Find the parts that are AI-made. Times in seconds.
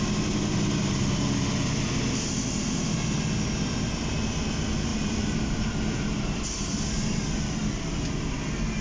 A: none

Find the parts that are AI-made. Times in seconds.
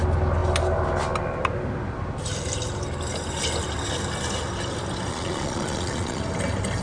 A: 5.1-6.2 (vocoder, Vocos)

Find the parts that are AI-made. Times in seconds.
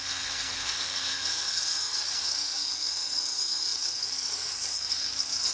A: 0.0-5.5 (codec, SNAC)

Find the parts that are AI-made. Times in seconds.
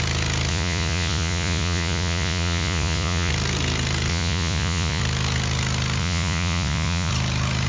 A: 0.5-3.3 (vocoder, Vocos); 4.1-5.0; 6.0-7.1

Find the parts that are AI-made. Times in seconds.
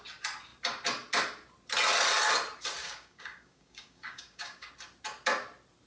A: 2.8-4.7 (codec, DAC)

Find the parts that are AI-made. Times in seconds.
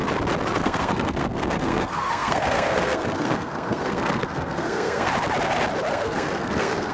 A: 0.6-5.1 (codec, SNAC); 5.9-6.9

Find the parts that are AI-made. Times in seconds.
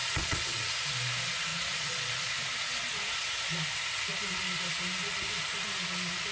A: 0.0-0.7 (vocoder, Vocos); 1.5-3.5